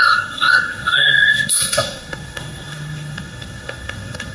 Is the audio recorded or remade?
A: remade